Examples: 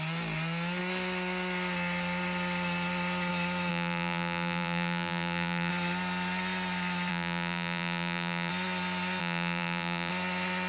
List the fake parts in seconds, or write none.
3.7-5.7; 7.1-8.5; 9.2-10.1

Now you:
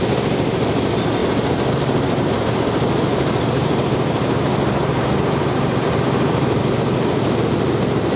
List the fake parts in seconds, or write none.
1.2-2.5; 3.1-7.3

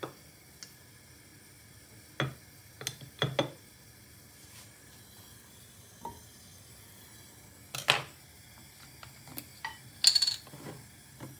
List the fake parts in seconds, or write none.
6.5-7.4

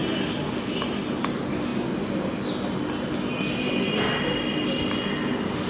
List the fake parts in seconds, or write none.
none

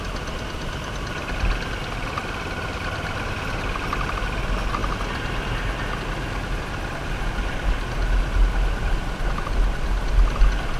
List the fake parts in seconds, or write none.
none

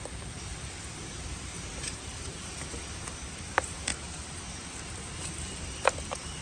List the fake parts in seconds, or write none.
0.5-1.0; 1.5-2.8; 3.9-6.4

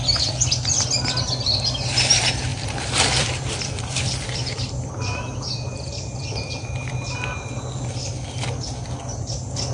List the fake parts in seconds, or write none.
2.5-6.9